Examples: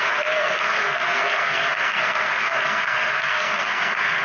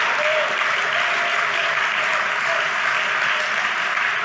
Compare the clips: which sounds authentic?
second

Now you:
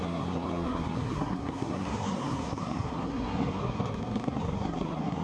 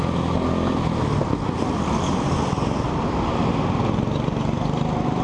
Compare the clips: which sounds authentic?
second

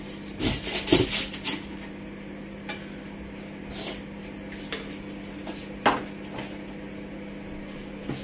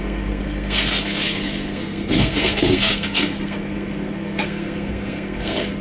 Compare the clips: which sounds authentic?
first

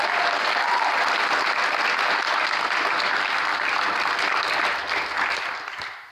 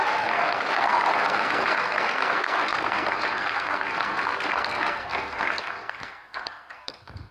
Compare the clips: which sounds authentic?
first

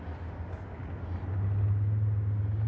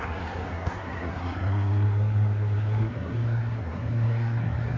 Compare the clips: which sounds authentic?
first